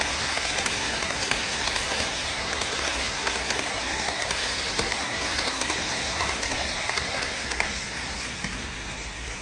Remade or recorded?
remade